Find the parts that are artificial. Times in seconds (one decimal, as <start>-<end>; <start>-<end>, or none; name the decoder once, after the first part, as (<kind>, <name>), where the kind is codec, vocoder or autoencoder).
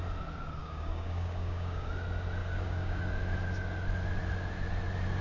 0.6-1.9 (codec, DAC); 2.4-3.0